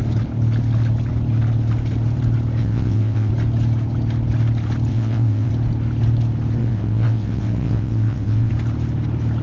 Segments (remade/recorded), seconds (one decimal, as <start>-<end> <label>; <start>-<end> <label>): 0.0-2.6 recorded; 2.6-3.3 remade; 3.3-4.9 recorded; 4.9-5.5 remade; 5.5-6.6 recorded; 6.6-8.5 remade; 8.5-9.4 recorded